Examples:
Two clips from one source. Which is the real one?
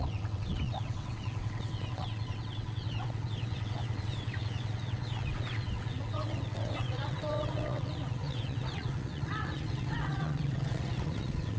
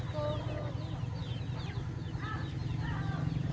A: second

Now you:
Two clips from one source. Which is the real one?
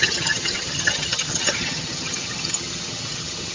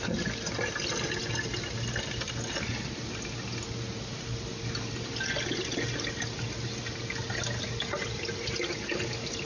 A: second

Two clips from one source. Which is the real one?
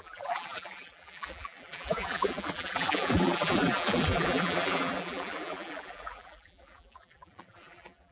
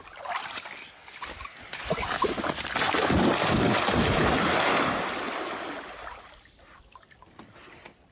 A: second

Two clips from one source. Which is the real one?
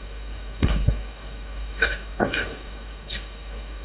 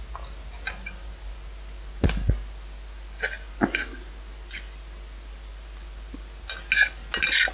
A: second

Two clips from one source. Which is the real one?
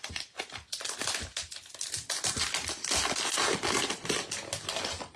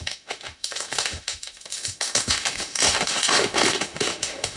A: first